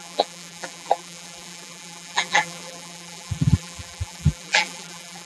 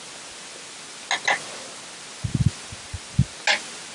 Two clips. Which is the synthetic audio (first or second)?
first